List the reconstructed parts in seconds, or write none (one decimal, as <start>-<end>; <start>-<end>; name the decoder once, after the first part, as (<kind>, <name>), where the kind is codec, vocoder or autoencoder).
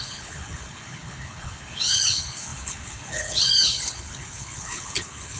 0.0-5.4 (codec, HILCodec)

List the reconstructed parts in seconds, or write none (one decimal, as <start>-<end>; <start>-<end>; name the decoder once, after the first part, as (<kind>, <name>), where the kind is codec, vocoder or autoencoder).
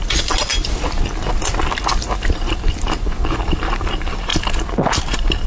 0.0-0.5 (vocoder, BigVGAN v2); 3.8-4.3; 5.0-5.5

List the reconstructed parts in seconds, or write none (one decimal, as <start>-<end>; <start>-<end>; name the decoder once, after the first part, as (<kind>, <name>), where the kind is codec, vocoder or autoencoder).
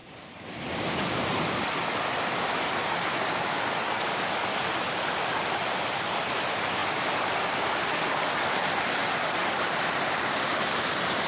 0.0-1.2 (vocoder, BigVGAN v2); 6.8-7.8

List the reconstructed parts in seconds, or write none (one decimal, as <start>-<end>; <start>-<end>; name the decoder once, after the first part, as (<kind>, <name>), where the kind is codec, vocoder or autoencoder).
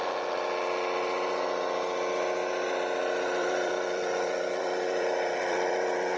3.4-6.2 (vocoder, BigVGAN v2)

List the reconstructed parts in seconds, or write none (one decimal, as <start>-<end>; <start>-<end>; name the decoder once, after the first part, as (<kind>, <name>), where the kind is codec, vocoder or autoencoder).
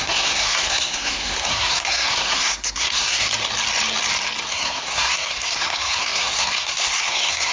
0.0-3.3 (codec, SNAC); 4.5-7.5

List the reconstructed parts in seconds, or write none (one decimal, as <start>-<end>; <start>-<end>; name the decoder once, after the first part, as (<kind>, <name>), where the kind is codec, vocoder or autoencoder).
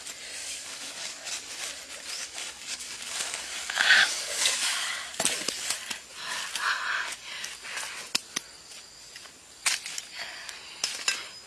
0.4-1.3 (codec, DAC); 2.2-5.1